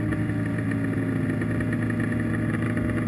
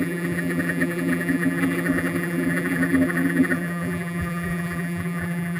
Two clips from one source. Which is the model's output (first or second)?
second